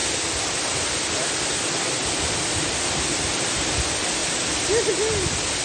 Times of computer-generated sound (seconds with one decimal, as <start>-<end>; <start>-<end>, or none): 0.0-3.4; 4.2-4.9